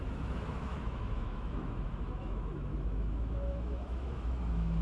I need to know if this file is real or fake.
fake